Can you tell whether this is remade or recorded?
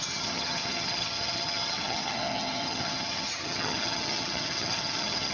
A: remade